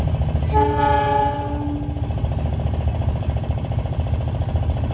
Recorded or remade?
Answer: recorded